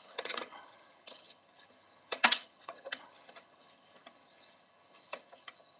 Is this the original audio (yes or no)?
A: no